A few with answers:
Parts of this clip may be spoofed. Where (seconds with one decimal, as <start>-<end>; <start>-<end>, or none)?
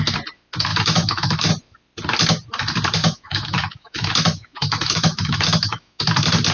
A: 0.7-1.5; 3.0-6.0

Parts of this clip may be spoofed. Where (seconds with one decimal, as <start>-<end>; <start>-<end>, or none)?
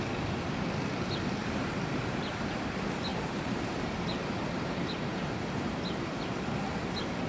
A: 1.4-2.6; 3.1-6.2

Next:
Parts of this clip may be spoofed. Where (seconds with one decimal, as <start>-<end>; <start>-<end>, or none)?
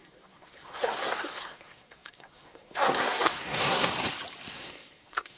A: 0.0-3.9; 4.5-5.4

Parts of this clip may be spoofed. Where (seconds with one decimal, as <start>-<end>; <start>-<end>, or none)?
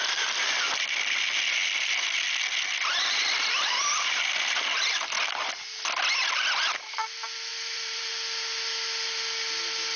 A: 7.5-8.1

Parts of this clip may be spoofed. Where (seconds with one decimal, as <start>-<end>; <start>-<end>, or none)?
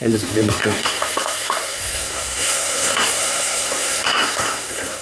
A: 0.0-5.0